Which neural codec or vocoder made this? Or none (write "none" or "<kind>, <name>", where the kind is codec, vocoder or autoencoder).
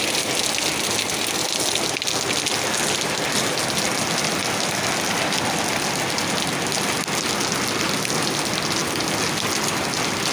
none